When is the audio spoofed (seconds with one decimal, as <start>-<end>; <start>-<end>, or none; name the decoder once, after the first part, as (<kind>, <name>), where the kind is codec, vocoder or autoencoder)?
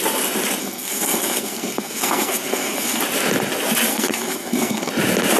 0.6-3.0 (codec, SNAC); 3.9-4.9